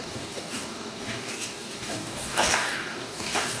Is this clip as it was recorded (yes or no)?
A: no